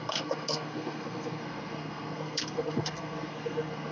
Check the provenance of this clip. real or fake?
fake